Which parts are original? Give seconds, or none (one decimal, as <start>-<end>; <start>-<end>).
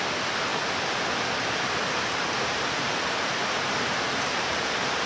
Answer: 0.0-5.1